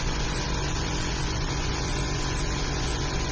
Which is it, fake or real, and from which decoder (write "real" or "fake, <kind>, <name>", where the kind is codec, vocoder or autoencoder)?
fake, vocoder, Vocos